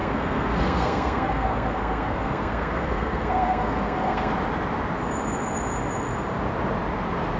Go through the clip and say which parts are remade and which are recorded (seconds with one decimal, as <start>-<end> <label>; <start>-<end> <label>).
0.0-4.3 remade; 4.3-7.4 recorded

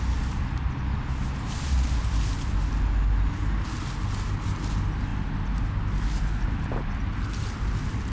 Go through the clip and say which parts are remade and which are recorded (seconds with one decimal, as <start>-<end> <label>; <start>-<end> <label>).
0.0-8.1 recorded

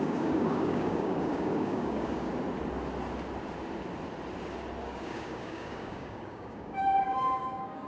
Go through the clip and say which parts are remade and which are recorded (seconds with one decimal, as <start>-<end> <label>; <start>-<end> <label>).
0.0-2.3 remade; 2.3-4.8 recorded; 4.8-7.9 remade

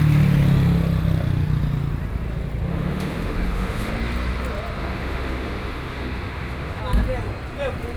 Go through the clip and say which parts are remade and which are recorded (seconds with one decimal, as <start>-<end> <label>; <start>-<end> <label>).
0.0-2.7 recorded; 2.7-3.9 remade; 3.9-4.8 recorded; 4.8-6.8 remade; 6.8-8.0 recorded

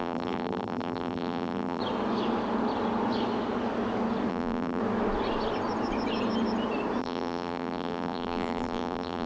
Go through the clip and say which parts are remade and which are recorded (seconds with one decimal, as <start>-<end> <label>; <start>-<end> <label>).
0.0-1.8 remade; 1.8-4.3 recorded; 4.3-4.8 remade; 4.8-7.0 recorded; 7.0-9.3 remade

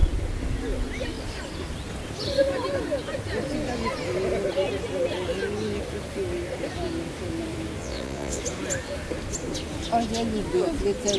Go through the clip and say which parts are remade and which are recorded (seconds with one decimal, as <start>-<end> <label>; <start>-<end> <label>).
0.0-7.8 recorded; 7.8-8.4 remade; 8.4-11.2 recorded

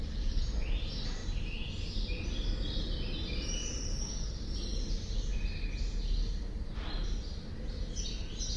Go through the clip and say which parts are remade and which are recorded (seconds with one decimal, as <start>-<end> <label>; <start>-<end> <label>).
0.0-8.6 recorded

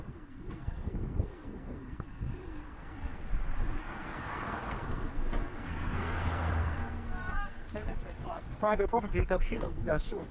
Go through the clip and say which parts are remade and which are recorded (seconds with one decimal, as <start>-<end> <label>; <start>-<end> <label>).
0.0-3.3 remade; 3.3-3.8 recorded; 3.8-10.3 remade